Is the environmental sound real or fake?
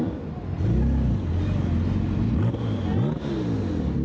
real